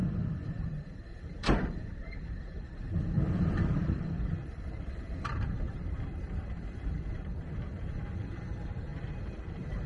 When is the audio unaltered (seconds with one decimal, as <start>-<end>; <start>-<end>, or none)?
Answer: 0.0-0.6; 8.9-9.4